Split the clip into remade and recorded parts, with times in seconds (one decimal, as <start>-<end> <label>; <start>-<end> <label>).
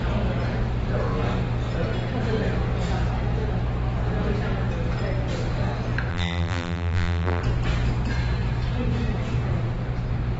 0.0-6.1 recorded; 6.1-7.4 remade; 7.4-10.4 recorded